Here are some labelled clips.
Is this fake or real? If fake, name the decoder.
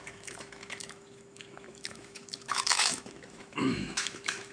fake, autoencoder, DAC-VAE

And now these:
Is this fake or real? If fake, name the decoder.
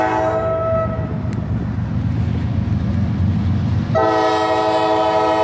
real